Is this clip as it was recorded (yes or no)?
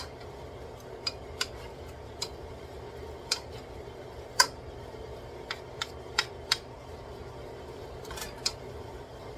no